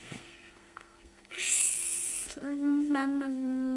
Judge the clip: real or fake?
fake